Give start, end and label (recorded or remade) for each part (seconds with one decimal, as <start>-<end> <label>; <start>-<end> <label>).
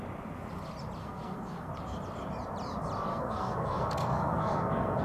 0.0-1.0 recorded; 1.0-1.7 remade; 1.7-3.1 recorded; 3.1-5.0 remade